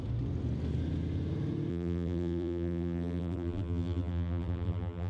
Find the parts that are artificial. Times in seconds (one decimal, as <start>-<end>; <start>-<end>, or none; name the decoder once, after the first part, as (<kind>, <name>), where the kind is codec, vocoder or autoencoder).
1.7-5.1 (vocoder, BigVGAN v2)